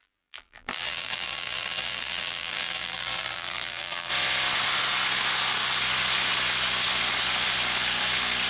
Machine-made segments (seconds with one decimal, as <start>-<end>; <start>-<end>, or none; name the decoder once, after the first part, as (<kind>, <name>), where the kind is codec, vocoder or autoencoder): 0.0-4.1 (vocoder, BigVGAN v2)